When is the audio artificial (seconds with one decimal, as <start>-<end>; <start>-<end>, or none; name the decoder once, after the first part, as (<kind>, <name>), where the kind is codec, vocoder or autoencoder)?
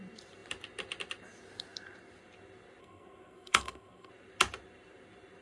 2.8-4.1 (codec, SNAC)